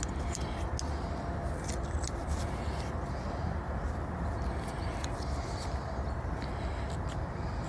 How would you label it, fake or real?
real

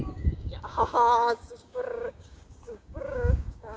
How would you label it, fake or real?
fake